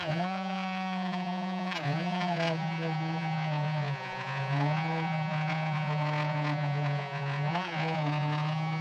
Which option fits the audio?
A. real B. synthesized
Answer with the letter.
B